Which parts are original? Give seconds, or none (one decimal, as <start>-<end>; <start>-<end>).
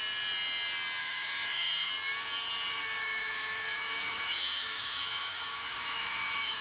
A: 0.0-1.0; 1.9-3.0